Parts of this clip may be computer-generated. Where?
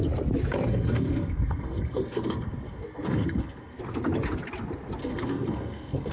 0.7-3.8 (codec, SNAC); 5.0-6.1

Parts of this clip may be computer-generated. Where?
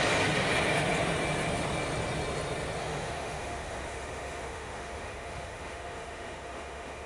2.8-7.1 (autoencoder, DAC-VAE)